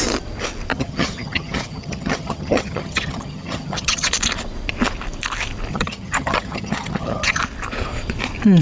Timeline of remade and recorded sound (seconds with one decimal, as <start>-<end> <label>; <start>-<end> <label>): 0.0-0.7 recorded; 0.7-4.1 remade; 4.1-5.7 recorded; 5.7-7.4 remade; 7.4-8.6 recorded